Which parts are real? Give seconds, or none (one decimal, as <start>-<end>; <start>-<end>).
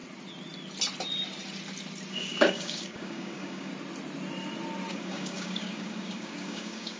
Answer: 0.0-2.1; 3.7-4.9